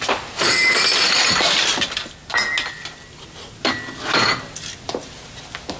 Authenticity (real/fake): real